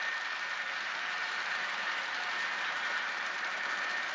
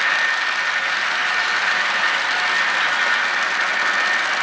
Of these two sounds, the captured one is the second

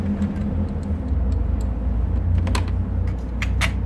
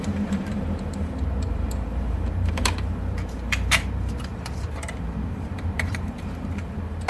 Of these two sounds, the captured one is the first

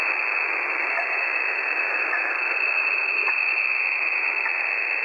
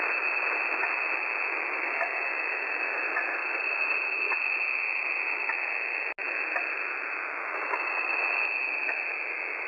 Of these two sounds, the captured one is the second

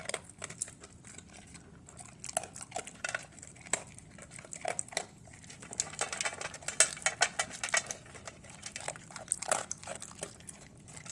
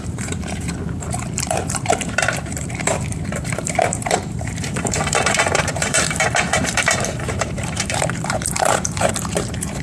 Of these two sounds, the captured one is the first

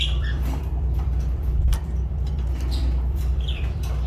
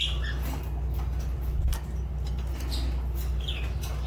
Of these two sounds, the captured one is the second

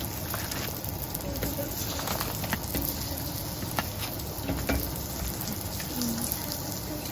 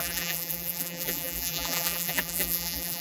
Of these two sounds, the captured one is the first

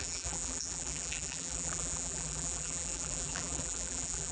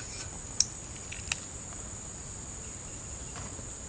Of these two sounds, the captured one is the second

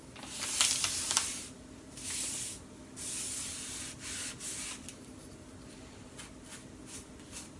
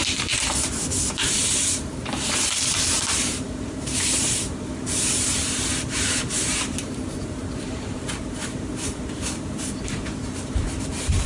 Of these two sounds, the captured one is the first